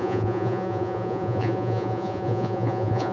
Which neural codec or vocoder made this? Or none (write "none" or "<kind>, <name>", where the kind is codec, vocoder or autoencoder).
vocoder, Vocos